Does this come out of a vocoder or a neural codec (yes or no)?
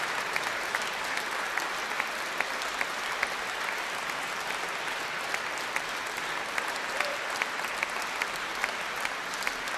no